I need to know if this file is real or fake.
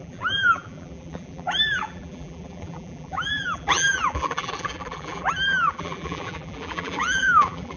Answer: fake